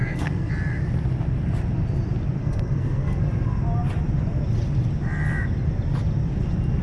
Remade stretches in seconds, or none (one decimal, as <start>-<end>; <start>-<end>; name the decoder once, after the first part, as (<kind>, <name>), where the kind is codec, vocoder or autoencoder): 0.0-0.5 (codec, SNAC); 2.4-3.2